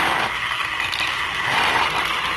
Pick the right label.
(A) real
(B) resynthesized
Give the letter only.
A